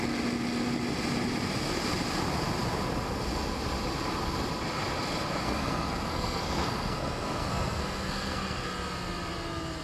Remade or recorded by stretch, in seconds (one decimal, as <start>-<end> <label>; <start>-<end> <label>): 0.0-5.4 recorded; 5.4-8.7 remade; 8.7-9.8 recorded